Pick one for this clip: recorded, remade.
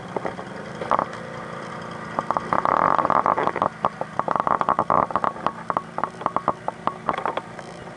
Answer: recorded